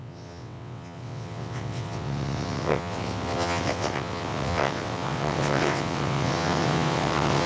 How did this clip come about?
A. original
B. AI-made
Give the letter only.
B